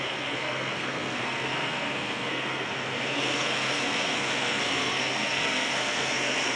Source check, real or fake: fake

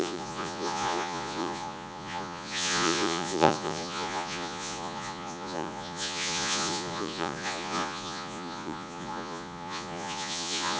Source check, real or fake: fake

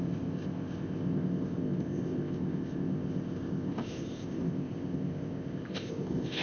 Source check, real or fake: fake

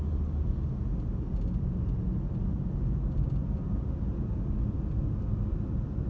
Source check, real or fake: real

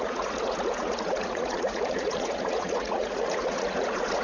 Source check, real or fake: fake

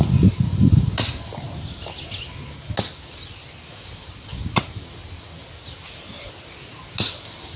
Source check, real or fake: real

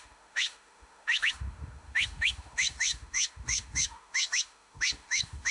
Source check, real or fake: fake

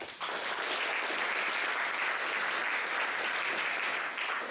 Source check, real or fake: real